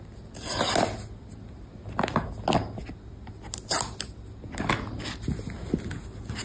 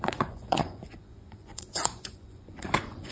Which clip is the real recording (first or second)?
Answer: first